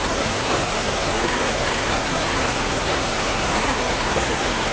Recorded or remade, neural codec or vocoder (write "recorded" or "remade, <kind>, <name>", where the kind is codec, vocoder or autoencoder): remade, codec, SNAC